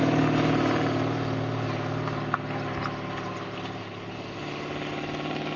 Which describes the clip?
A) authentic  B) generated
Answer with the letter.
A